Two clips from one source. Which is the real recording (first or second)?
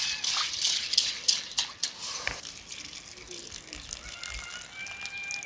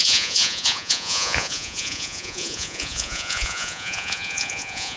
first